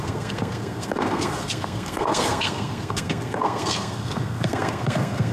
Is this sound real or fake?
fake